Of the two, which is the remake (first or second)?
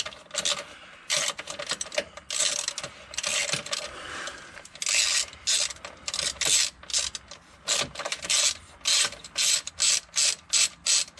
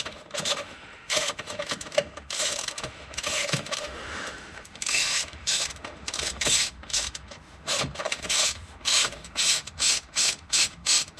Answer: second